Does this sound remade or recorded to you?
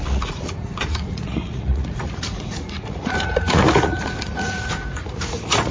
remade